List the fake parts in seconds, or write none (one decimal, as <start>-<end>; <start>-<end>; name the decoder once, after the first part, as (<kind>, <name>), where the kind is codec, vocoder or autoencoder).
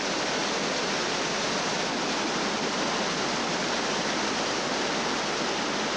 none